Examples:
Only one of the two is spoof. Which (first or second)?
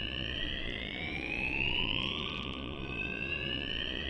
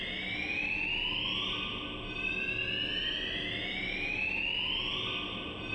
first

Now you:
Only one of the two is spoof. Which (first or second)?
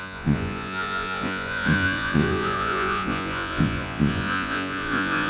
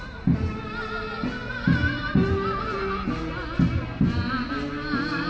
first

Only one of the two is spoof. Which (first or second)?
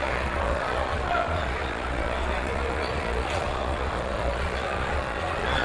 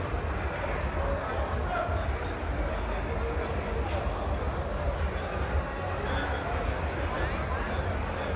first